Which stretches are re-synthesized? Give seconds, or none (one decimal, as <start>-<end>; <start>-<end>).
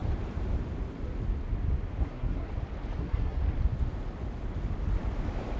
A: 2.0-2.5; 3.0-3.4